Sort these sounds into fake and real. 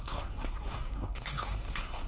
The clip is fake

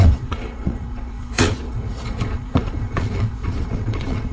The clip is fake